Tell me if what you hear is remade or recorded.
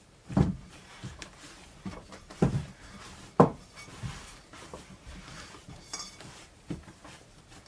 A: remade